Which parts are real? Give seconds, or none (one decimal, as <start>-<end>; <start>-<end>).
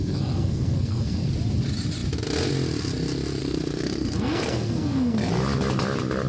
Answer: 1.3-3.4; 5.3-6.3